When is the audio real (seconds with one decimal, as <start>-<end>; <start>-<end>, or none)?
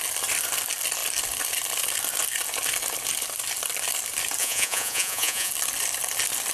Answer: 0.0-4.4; 5.5-6.5